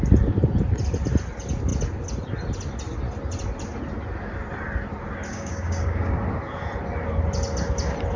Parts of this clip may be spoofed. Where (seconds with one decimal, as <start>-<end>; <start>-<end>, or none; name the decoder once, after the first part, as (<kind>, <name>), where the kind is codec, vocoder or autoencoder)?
5.3-6.2 (codec, DAC)

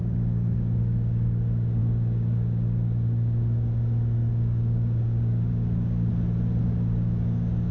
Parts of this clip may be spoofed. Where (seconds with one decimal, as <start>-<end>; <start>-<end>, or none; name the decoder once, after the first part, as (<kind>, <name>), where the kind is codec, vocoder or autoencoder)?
0.0-6.1 (codec, DAC); 6.6-7.7

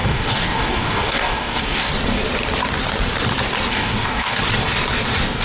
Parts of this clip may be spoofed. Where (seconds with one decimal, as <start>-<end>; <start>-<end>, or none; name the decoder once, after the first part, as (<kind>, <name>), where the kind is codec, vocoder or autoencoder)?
0.0-1.9 (codec, DAC); 3.7-4.4

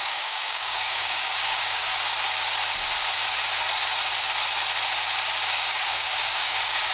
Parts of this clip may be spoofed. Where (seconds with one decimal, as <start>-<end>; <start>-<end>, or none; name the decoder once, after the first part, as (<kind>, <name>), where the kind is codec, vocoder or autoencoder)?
0.0-1.9 (codec, DAC); 5.5-6.9

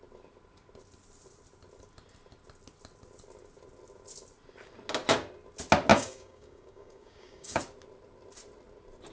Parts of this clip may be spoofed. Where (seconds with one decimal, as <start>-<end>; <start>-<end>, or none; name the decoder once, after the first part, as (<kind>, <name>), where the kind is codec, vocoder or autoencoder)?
5.9-7.6 (codec, DAC)

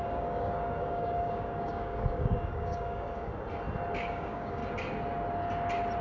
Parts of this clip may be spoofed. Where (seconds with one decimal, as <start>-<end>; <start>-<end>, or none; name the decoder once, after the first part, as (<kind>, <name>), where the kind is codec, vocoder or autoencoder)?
0.0-3.3 (codec, DAC); 4.1-4.6

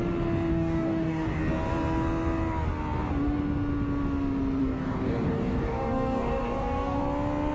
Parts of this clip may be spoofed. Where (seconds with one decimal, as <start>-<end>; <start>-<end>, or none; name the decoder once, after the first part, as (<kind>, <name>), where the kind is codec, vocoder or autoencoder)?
0.5-1.4 (codec, DAC); 4.6-7.0